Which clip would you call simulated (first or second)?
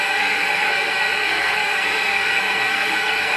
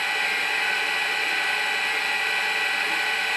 first